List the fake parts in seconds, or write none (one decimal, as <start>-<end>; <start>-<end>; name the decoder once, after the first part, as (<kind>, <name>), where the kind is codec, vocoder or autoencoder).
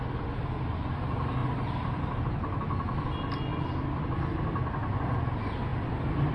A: 1.4-2.2 (vocoder, BigVGAN v2)